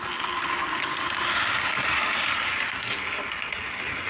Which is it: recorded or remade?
recorded